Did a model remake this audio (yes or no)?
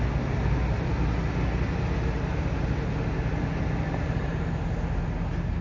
no